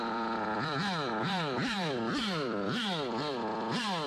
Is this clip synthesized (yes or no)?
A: yes